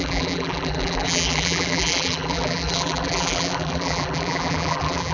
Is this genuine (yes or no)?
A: no